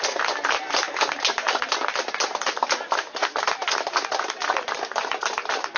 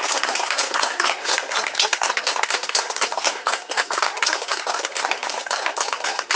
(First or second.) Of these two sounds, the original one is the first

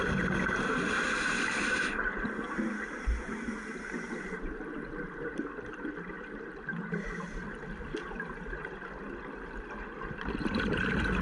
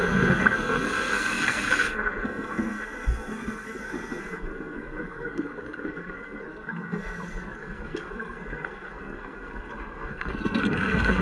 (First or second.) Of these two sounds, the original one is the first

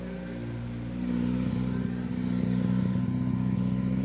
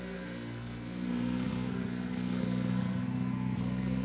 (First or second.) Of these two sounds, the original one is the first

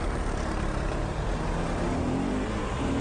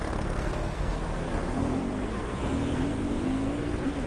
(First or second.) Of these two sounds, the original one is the first